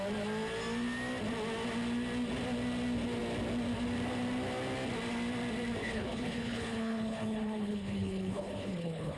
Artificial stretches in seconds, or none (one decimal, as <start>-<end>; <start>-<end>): 5.8-9.2